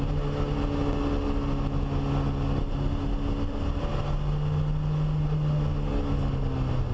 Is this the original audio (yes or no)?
yes